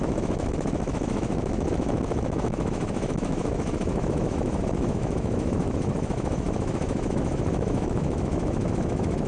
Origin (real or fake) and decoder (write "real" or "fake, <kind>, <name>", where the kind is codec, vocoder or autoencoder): fake, autoencoder, DAC-VAE